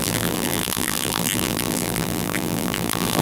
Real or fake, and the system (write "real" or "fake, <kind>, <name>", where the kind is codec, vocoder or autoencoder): fake, vocoder, BigVGAN v2